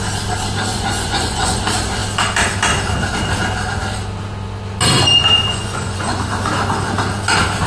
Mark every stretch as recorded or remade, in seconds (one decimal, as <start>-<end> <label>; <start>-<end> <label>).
0.0-0.7 recorded; 0.7-1.6 remade; 1.6-5.5 recorded; 5.5-6.2 remade; 6.2-7.7 recorded